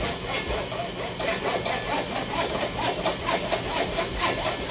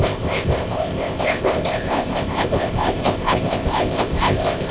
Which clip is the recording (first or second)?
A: first